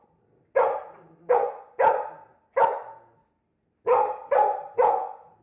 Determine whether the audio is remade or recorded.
recorded